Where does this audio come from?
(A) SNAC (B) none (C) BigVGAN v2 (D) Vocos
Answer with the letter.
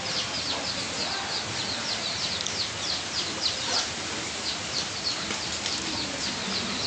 B